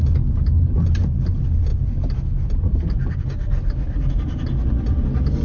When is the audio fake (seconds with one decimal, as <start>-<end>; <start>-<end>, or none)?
none